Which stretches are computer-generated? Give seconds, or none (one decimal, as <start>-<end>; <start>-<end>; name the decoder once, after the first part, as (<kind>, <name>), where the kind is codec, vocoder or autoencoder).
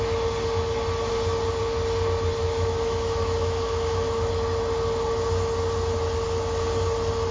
2.4-4.3 (autoencoder, DAC-VAE)